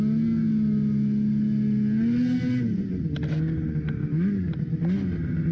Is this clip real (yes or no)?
yes